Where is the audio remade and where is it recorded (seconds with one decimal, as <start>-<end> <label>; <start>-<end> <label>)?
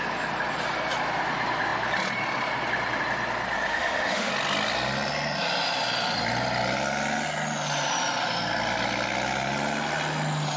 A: 0.0-3.7 recorded; 3.7-4.3 remade; 4.3-10.6 recorded